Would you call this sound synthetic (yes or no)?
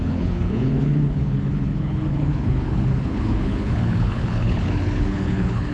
yes